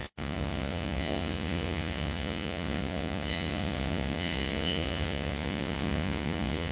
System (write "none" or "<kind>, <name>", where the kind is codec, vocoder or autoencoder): vocoder, Vocos